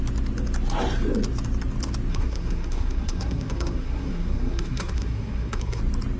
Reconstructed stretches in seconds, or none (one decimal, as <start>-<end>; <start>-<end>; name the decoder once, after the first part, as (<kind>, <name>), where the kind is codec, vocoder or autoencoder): 2.1-5.8 (codec, SNAC)

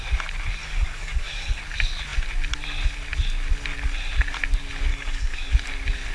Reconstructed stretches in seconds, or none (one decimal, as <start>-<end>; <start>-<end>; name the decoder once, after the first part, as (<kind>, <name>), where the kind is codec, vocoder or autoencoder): 0.6-1.6 (codec, DAC); 4.9-5.5

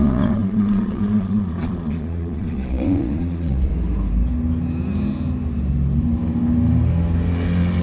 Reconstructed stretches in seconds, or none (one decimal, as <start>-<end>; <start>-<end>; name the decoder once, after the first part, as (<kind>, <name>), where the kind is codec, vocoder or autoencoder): 0.0-3.7 (vocoder, Vocos)

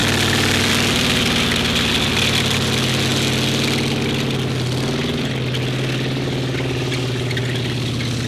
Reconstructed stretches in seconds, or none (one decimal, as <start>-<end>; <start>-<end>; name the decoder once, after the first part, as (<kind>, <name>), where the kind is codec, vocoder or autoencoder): none

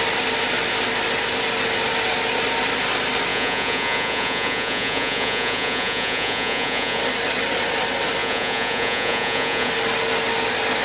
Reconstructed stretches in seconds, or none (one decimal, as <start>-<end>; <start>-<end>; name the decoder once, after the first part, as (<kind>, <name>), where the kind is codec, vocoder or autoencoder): 3.3-7.0 (vocoder, Vocos); 8.2-9.7

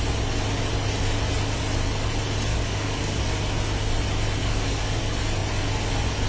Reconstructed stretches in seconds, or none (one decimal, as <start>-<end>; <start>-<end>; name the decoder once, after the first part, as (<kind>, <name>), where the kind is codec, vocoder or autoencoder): 2.5-3.2 (codec, DAC); 4.4-5.0